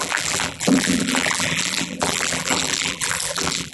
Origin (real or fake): fake